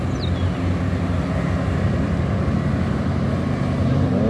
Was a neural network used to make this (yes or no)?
no